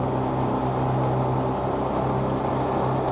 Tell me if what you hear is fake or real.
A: real